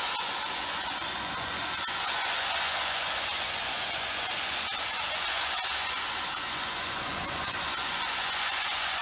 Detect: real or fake fake